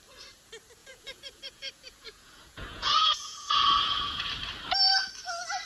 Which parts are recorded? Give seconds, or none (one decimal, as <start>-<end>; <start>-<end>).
0.0-0.8; 4.2-5.7